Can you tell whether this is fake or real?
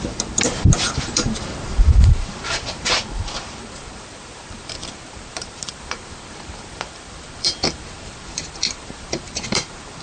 fake